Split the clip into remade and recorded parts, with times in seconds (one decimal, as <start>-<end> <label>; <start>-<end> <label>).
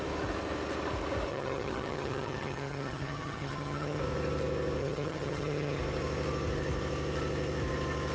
0.0-1.3 recorded; 1.3-4.0 remade; 4.0-4.8 recorded; 4.8-5.8 remade; 5.8-8.1 recorded